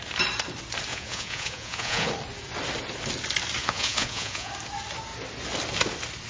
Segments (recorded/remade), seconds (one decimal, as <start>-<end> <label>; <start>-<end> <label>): 0.0-0.9 recorded; 0.9-2.1 remade; 2.1-3.6 recorded; 3.6-4.5 remade; 4.5-6.3 recorded